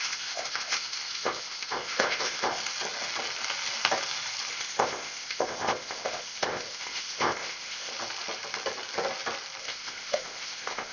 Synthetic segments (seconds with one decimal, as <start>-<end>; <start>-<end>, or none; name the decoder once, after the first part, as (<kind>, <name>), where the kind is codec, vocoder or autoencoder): 0.0-2.6 (codec, ZipCodec); 4.5-7.9; 9.6-10.9